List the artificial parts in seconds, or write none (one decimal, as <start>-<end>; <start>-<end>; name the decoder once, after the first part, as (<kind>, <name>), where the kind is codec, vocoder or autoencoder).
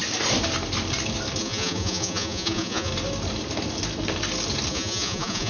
1.4-2.9 (vocoder, Vocos); 4.7-5.5